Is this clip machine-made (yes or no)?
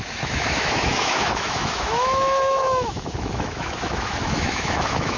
yes